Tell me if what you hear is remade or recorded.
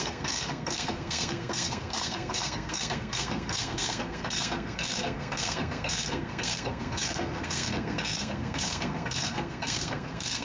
remade